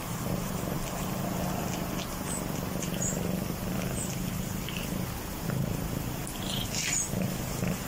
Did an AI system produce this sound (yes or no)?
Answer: no